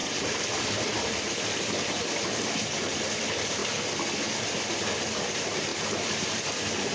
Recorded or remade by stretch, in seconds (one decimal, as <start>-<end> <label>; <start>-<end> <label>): 0.0-3.6 remade; 3.6-5.2 recorded; 5.2-6.9 remade

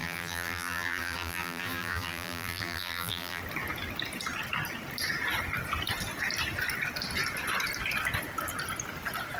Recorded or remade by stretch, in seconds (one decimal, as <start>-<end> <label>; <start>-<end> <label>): 0.0-3.4 remade; 3.4-9.4 recorded

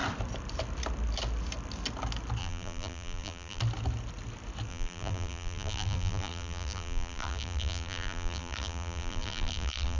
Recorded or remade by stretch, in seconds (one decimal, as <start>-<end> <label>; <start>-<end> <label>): 0.0-2.4 recorded; 2.4-3.6 remade; 3.6-4.7 recorded; 4.7-10.0 remade